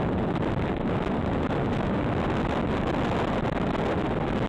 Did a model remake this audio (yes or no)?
no